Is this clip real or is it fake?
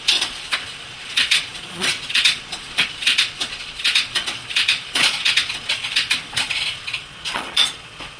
fake